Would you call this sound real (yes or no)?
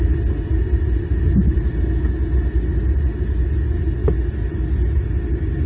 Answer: yes